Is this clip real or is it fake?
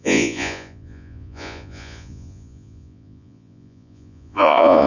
fake